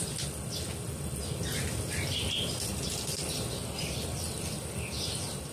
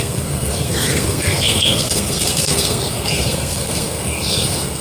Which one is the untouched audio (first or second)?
first